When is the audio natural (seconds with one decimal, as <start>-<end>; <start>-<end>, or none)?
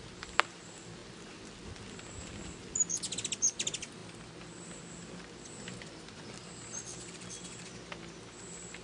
0.0-8.8